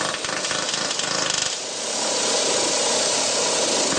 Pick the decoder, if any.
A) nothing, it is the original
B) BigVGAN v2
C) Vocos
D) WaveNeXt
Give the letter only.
A